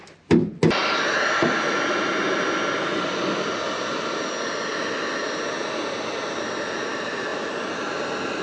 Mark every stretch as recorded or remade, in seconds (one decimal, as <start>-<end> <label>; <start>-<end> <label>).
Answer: 0.0-8.4 recorded